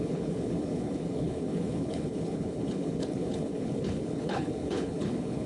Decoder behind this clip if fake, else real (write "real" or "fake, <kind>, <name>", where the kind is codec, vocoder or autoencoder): fake, codec, HILCodec